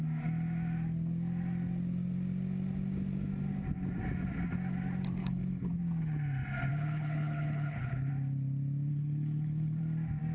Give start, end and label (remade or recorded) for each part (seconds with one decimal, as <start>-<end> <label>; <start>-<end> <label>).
0.0-5.2 recorded; 5.2-5.7 remade; 5.7-6.7 recorded; 6.7-8.1 remade; 8.1-8.9 recorded; 8.9-9.8 remade; 9.8-10.3 recorded